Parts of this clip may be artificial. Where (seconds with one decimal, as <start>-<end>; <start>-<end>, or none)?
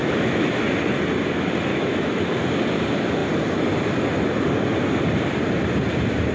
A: 0.0-0.6; 1.7-2.4